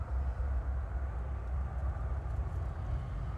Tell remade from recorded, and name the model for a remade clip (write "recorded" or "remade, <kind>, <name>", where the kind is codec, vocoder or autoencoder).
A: recorded